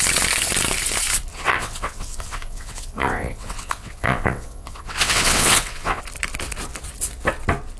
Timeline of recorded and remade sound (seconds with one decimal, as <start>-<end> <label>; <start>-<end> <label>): 0.0-1.3 recorded; 1.3-6.0 remade; 6.0-7.8 recorded